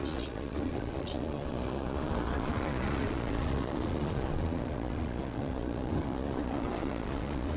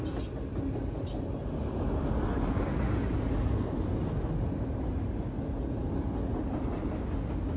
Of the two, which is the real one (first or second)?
second